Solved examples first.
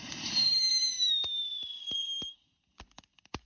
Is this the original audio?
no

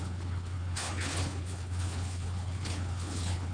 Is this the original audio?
no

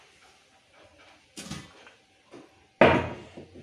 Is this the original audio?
yes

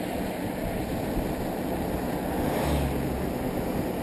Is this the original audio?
yes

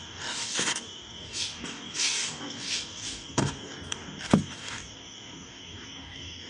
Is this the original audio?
no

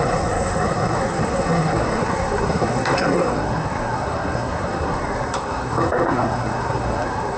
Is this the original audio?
no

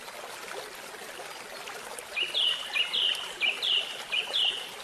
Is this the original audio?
yes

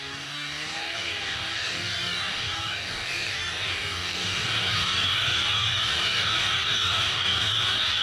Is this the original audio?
no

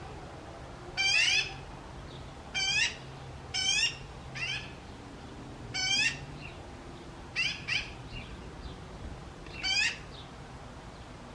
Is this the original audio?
yes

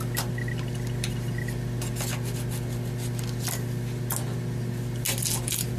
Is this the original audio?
yes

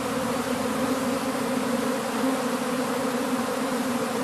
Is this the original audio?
yes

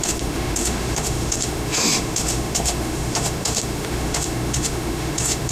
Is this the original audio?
no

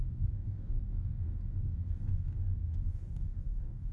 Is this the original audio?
no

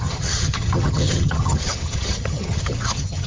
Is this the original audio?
no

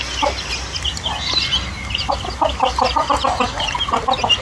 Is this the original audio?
yes